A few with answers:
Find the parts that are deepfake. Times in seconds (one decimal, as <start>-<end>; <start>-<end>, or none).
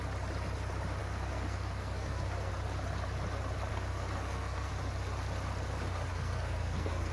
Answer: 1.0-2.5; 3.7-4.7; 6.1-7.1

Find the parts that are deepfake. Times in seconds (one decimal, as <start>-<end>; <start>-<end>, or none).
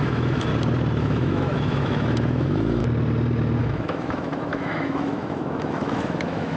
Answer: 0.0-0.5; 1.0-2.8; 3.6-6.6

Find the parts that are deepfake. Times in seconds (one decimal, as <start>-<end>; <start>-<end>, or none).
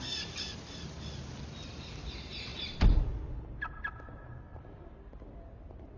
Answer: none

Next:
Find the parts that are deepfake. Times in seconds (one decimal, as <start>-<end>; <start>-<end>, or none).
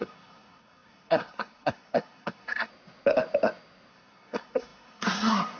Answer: 0.0-2.7; 3.9-5.6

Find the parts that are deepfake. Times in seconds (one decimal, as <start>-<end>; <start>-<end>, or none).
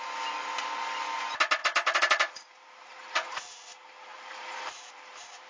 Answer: 1.6-3.4; 4.1-5.5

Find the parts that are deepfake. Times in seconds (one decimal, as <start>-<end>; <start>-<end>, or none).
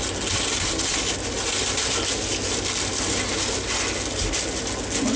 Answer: none